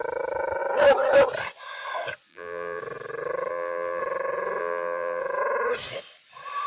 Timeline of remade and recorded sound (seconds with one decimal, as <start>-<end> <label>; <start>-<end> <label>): 0.0-2.3 recorded; 2.3-2.8 remade; 2.8-3.5 recorded; 3.5-4.0 remade; 4.0-4.6 recorded; 4.6-5.2 remade; 5.2-6.7 recorded